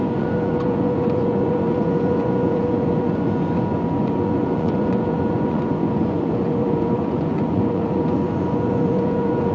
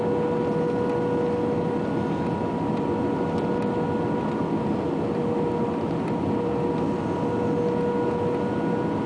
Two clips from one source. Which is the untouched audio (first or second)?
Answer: second